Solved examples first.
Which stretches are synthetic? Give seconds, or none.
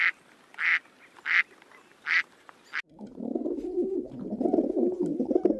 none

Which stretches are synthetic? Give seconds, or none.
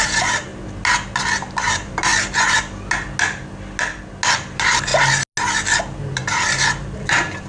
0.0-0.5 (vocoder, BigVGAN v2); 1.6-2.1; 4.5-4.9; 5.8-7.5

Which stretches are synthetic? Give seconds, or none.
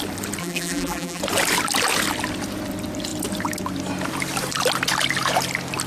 0.4-1.2 (vocoder, BigVGAN v2)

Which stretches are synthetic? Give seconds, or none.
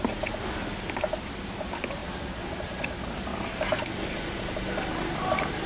none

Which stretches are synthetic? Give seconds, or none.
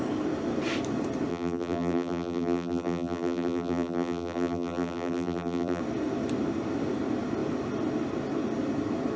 1.3-5.8 (vocoder, BigVGAN v2)